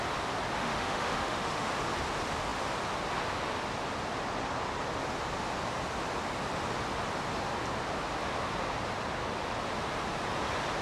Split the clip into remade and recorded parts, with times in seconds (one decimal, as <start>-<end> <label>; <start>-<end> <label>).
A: 0.0-0.6 recorded; 0.6-1.7 remade; 1.7-10.8 recorded